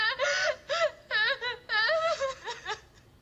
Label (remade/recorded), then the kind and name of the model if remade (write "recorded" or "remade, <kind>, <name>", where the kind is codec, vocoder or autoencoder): recorded